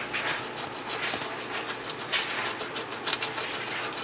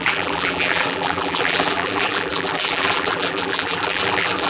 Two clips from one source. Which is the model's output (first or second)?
second